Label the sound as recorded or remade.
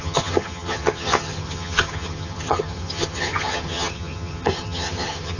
remade